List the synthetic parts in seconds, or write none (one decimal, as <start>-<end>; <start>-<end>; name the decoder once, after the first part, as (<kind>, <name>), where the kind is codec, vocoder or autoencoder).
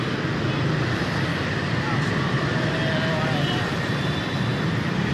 none